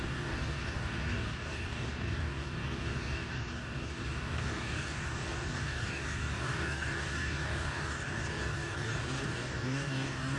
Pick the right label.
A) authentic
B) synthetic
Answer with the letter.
B